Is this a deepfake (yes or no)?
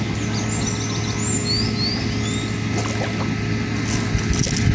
no